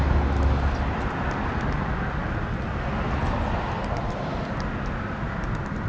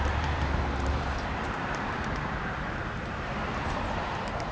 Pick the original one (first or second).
first